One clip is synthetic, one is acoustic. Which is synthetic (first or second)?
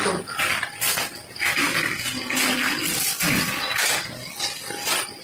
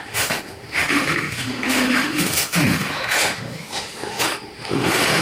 second